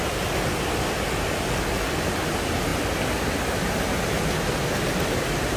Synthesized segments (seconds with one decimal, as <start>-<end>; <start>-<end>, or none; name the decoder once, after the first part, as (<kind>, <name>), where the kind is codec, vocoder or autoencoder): none

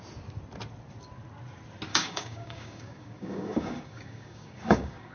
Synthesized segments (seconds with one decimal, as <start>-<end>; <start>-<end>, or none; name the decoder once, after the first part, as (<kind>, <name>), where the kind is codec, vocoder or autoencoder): 1.9-5.1 (codec, DAC)